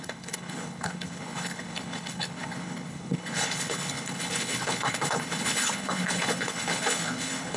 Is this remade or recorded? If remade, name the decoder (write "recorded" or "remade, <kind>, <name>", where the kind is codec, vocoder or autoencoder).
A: remade, codec, HILCodec